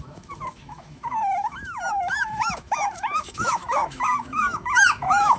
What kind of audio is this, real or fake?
fake